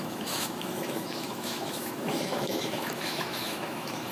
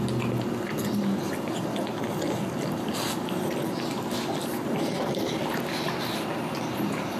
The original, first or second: second